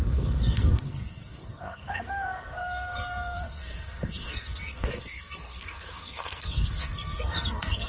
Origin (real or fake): fake